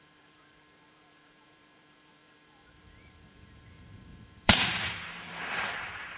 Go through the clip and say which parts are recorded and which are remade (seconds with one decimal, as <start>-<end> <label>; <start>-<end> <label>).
0.0-6.2 remade